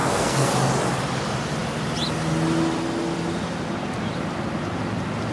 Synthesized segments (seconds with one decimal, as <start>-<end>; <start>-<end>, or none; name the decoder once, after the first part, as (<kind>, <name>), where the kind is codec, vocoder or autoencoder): 0.0-0.5 (codec, SNAC)